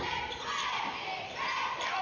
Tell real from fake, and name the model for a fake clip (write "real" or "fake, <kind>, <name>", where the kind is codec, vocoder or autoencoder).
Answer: real